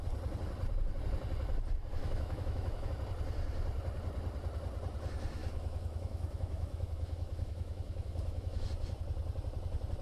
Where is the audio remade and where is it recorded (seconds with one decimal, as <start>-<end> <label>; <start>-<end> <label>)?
0.0-2.0 recorded; 2.0-2.9 remade; 2.9-5.4 recorded; 5.4-8.7 remade; 8.7-10.0 recorded

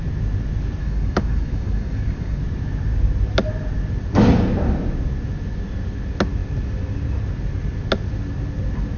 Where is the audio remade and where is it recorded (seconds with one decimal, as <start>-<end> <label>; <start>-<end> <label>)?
0.0-0.8 recorded; 0.8-2.4 remade; 2.4-9.0 recorded

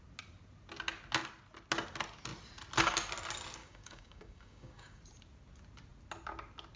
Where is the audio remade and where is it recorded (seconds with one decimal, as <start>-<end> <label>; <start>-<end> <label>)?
0.0-3.6 recorded; 3.6-5.0 remade; 5.0-6.8 recorded